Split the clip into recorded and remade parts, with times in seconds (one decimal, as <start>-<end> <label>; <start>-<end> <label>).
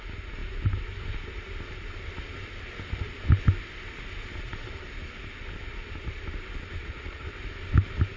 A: 0.0-6.8 recorded; 6.8-7.4 remade; 7.4-8.2 recorded